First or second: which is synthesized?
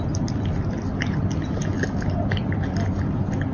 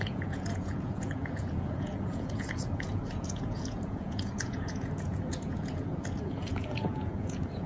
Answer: second